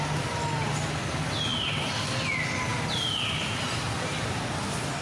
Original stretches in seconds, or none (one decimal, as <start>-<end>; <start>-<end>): 0.0-1.5; 2.1-5.0